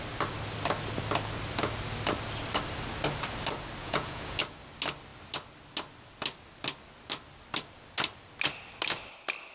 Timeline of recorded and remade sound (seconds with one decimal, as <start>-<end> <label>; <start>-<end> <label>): 0.0-3.8 recorded; 3.8-4.4 remade; 4.4-9.5 recorded